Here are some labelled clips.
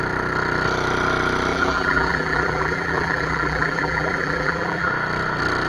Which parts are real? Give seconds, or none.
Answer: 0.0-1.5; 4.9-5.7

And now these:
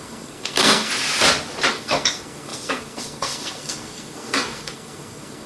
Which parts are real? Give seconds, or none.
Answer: 0.9-1.7

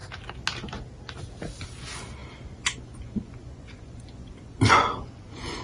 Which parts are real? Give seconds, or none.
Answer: 0.0-2.2

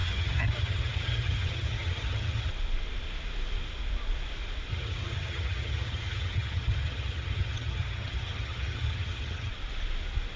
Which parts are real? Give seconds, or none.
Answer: 2.5-4.7; 9.5-10.4

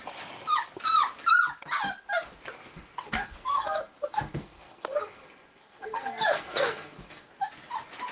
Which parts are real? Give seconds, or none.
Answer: 0.0-2.7; 7.3-8.1

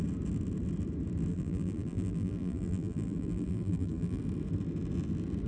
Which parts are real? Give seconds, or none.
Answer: 0.0-1.3; 4.2-5.5

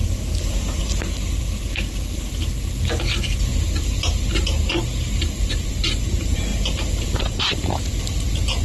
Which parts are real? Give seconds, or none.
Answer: 1.4-3.5; 4.7-6.5; 8.0-8.6

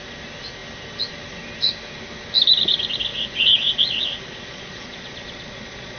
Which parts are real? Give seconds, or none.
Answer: 0.0-3.1